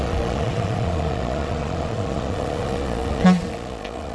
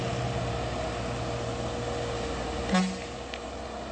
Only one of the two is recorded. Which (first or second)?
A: second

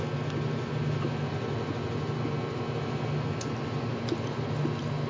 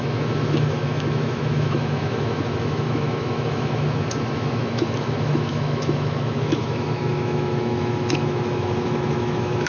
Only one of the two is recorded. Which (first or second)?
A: first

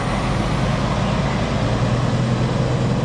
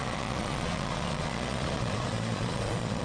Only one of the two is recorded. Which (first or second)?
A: first